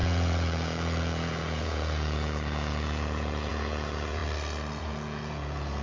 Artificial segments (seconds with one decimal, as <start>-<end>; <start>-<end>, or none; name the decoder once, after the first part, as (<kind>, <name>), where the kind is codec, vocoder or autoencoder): 0.0-4.2 (vocoder, Vocos); 4.8-5.8